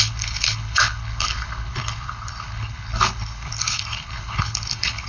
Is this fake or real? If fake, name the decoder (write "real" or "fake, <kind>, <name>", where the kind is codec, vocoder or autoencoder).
fake, codec, HILCodec